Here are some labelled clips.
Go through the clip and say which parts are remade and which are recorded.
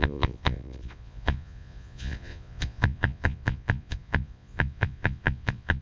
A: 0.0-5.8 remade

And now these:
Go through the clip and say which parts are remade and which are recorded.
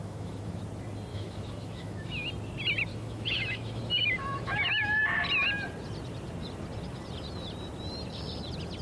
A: 0.0-0.6 remade; 0.6-1.1 recorded; 1.1-2.3 remade; 2.3-2.9 recorded; 2.9-5.0 remade; 5.0-8.8 recorded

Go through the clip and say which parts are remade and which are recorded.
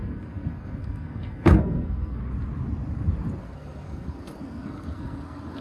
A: 0.0-2.2 remade; 2.2-3.4 recorded; 3.4-5.6 remade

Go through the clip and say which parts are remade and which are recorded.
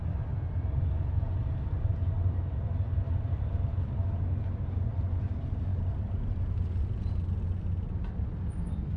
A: 0.0-9.0 recorded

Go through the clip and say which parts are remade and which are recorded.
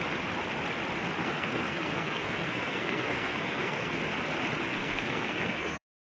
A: 0.0-1.2 recorded; 1.2-4.0 remade; 4.0-4.7 recorded; 4.7-6.0 remade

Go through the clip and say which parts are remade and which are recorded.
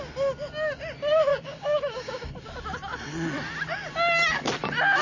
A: 0.0-1.3 recorded; 1.3-2.3 remade; 2.3-5.0 recorded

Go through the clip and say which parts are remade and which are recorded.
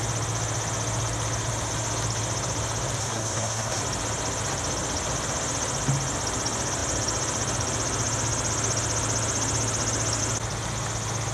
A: 0.0-3.0 recorded; 3.0-3.8 remade; 3.8-11.3 recorded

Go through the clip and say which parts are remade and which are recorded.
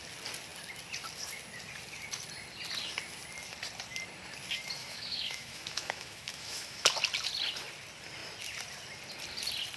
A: 0.0-4.8 recorded; 4.8-6.9 remade; 6.9-9.8 recorded